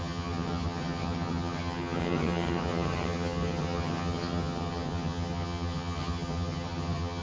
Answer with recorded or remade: remade